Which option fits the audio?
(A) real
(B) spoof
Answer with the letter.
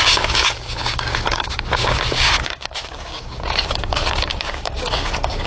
B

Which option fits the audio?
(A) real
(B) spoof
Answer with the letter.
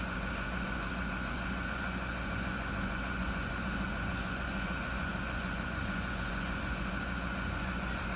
B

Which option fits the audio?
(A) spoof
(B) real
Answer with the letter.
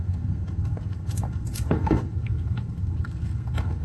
A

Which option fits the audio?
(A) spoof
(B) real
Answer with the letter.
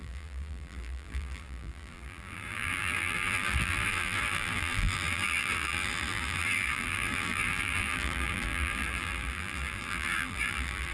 A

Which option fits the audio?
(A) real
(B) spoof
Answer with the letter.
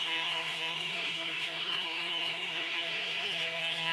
B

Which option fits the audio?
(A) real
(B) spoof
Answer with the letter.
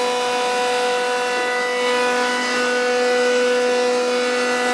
A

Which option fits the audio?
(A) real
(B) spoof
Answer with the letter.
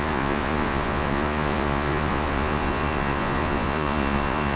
B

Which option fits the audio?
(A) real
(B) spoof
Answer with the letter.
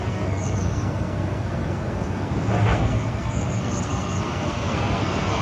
B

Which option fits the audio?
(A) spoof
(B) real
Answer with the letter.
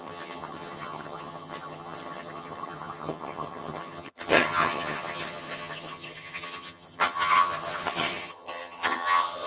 A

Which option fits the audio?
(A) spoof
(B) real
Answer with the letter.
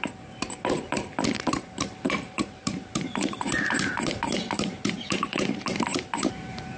A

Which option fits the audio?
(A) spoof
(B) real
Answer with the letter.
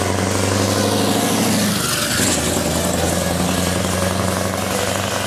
B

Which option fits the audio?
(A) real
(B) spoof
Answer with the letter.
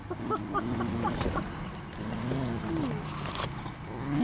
A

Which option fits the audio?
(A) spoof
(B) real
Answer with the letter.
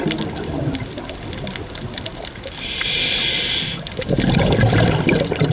B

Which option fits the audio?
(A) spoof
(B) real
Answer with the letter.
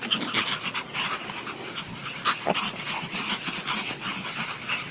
B